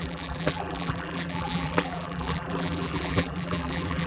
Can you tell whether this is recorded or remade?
remade